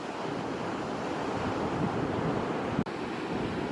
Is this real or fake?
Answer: real